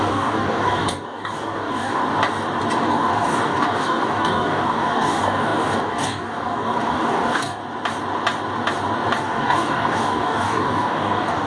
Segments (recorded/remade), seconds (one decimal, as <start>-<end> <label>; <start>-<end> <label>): 0.0-2.0 remade; 2.0-2.8 recorded; 2.8-7.6 remade; 7.6-9.2 recorded; 9.2-11.5 remade